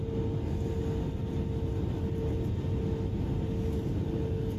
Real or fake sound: real